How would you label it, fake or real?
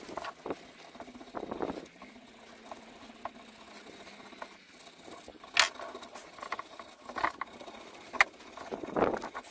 real